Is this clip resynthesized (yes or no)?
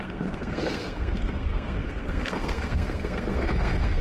yes